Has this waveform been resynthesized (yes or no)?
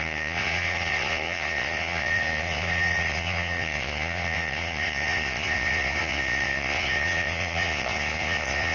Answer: yes